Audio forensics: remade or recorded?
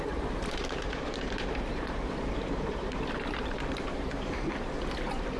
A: remade